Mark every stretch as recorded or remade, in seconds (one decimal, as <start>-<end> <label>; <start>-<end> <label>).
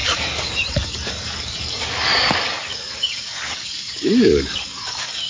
0.0-5.3 remade